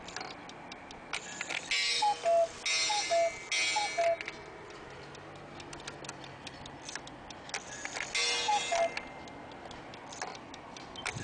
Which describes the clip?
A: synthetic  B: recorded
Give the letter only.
B